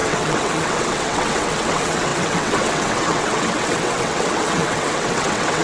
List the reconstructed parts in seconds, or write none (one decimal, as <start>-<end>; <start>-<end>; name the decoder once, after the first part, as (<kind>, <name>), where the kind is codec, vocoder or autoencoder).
0.0-5.6 (vocoder, WaveNeXt)